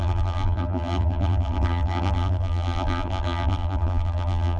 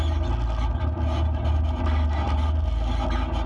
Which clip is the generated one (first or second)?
first